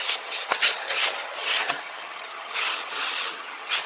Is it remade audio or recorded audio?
remade